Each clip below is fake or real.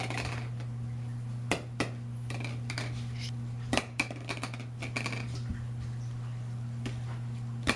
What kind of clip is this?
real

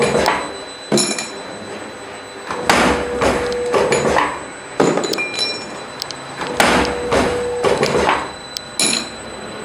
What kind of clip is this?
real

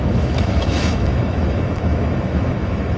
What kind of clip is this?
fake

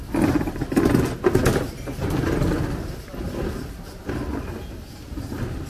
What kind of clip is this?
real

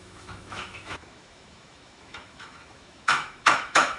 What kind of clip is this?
fake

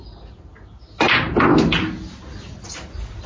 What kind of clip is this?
real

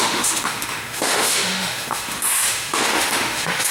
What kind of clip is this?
fake